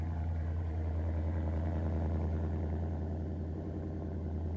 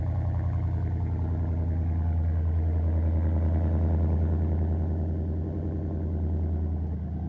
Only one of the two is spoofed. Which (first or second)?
first